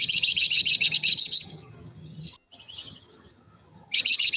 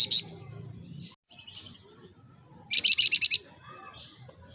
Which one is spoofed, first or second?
first